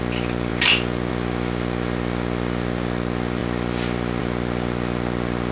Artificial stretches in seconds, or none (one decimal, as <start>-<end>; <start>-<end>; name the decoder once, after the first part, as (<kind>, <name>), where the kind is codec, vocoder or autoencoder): none